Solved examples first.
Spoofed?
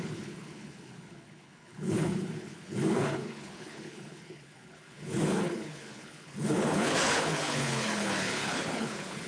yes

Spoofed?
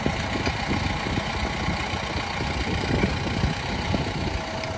no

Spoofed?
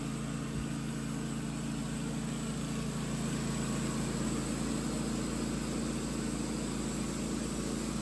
no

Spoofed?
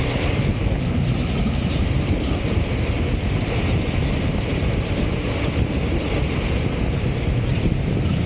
yes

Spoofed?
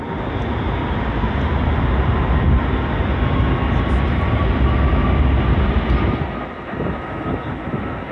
no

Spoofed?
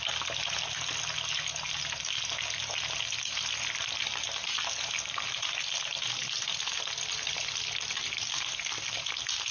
no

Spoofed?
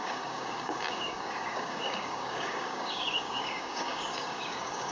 yes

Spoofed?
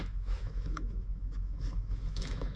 yes